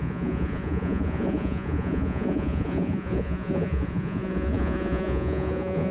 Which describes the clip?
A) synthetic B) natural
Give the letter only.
A